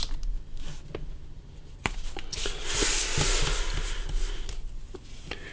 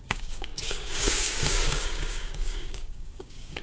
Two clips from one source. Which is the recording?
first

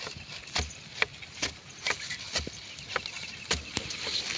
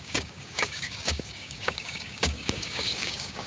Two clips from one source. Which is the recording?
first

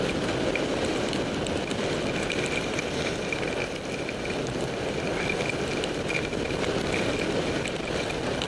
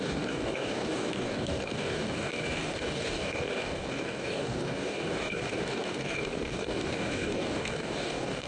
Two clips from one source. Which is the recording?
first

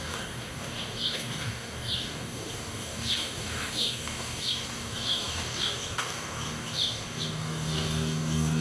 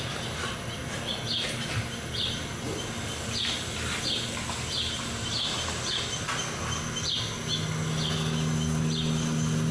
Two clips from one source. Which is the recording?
second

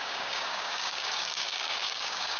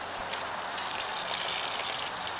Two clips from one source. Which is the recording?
second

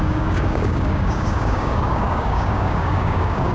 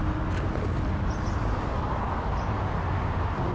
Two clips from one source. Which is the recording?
second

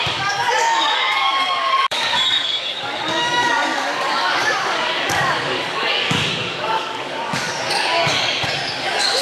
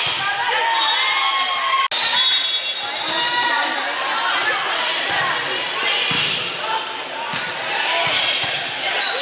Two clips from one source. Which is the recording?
second